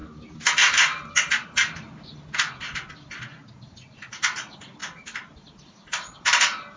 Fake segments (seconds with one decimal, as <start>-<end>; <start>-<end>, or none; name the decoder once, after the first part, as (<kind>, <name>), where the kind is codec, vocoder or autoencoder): none